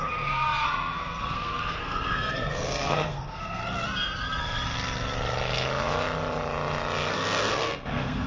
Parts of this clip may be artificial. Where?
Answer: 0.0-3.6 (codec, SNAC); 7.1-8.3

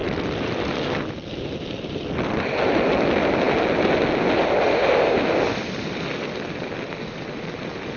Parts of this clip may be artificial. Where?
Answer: none

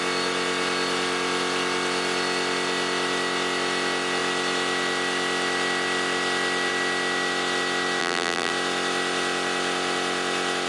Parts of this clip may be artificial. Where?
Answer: 8.0-8.5 (vocoder, BigVGAN v2)

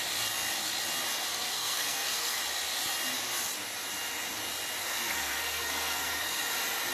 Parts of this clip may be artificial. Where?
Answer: 1.3-2.4 (codec, SNAC); 4.8-6.4

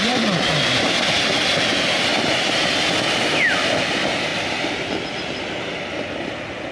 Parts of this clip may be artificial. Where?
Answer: none

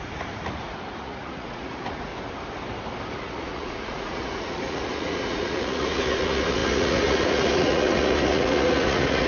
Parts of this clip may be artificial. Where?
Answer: 0.0-2.1 (vocoder, Vocos); 3.1-9.3

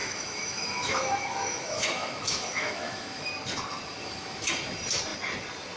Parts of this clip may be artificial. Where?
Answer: 0.0-3.3 (autoencoder, DAC-VAE); 4.0-4.5